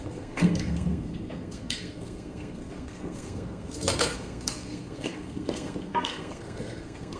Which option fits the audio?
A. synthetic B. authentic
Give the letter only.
A